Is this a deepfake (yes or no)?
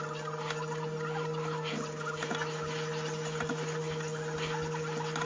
no